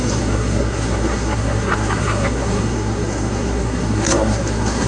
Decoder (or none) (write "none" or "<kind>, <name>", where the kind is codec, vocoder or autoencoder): codec, SNAC